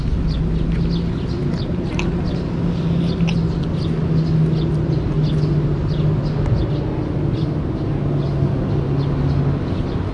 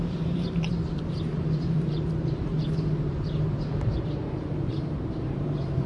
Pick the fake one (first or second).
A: second